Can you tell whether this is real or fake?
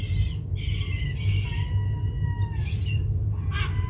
real